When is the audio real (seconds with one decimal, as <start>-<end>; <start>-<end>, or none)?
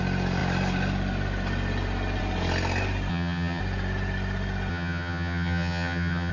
0.0-3.1; 3.6-4.7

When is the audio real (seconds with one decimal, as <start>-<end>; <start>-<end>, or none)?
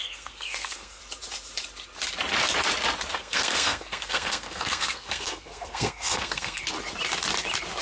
1.0-3.2; 6.6-7.8